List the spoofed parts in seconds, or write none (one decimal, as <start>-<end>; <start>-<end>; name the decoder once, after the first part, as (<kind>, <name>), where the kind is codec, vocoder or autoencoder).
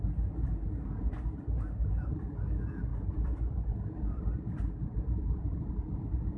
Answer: 2.9-5.7 (vocoder, BigVGAN v2)